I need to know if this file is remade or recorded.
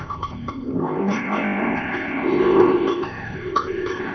remade